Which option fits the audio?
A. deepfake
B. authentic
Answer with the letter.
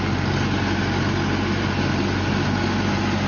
B